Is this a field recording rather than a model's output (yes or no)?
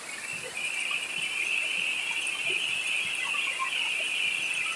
yes